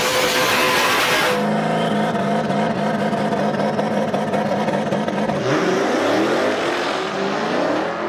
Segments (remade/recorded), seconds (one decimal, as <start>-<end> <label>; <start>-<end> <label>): 0.0-8.1 recorded